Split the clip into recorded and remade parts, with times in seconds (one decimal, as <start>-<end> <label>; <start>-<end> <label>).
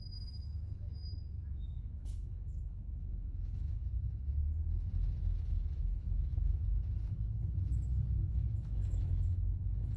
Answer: 0.0-3.8 remade; 3.8-5.4 recorded; 5.4-6.6 remade; 6.6-8.2 recorded; 8.2-10.0 remade